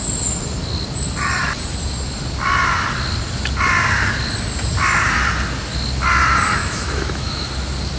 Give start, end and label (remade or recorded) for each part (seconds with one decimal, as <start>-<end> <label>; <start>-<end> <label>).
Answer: 0.0-6.6 recorded; 6.6-7.5 remade; 7.5-8.0 recorded